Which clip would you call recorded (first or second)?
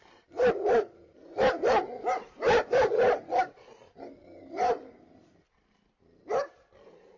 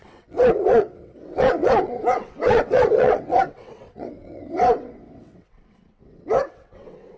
first